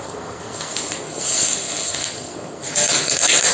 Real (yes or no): no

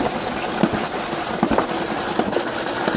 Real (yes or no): yes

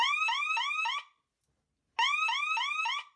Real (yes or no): yes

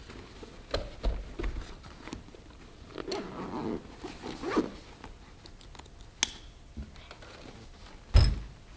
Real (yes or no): yes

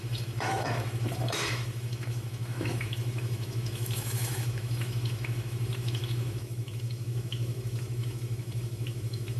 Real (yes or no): no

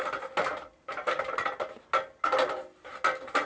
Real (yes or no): yes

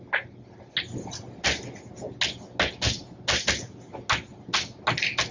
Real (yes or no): yes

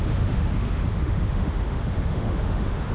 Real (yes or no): no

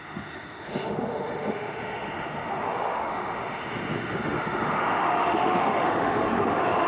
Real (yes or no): no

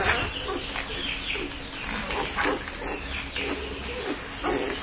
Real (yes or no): yes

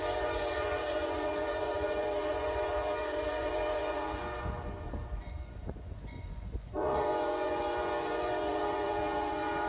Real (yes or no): no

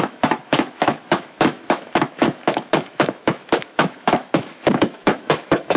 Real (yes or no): no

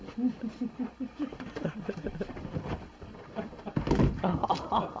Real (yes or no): yes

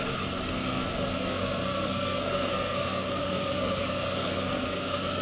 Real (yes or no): no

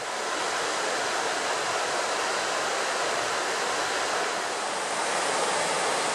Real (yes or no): yes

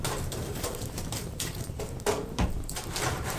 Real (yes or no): no